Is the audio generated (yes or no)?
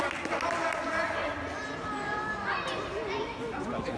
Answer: no